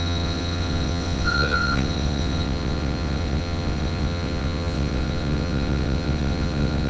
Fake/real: fake